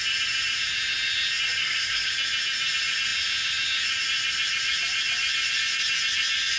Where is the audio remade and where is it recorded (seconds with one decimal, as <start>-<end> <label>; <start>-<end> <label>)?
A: 0.0-1.6 recorded; 1.6-2.1 remade; 2.1-6.6 recorded